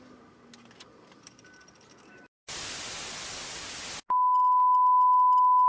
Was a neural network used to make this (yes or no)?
no